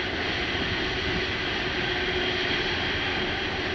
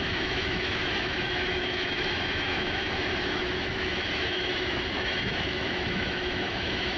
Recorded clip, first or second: first